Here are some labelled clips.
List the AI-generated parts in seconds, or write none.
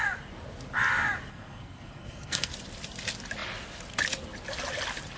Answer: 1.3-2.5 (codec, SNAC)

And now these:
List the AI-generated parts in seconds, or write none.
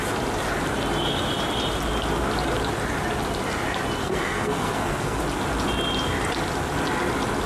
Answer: 4.0-5.2 (codec, SNAC)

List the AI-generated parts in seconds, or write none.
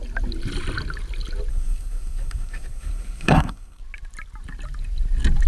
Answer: 1.5-3.8 (codec, SNAC)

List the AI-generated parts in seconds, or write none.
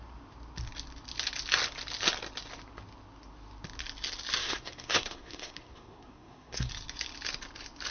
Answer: 4.4-6.7 (codec, SNAC)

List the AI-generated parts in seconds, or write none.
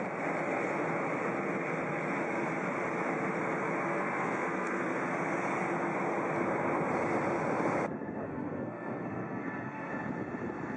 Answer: 3.9-5.0 (codec, SNAC); 8.2-9.9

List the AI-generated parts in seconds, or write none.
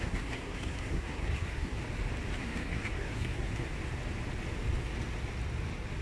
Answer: 0.0-1.8 (codec, SNAC); 2.4-3.7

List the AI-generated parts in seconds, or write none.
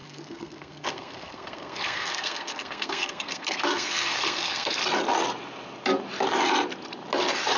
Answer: 0.0-4.8 (codec, SNAC)